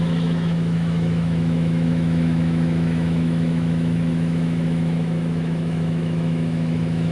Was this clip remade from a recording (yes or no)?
yes